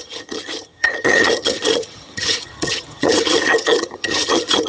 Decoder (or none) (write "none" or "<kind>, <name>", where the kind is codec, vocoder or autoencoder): vocoder, HiFi-GAN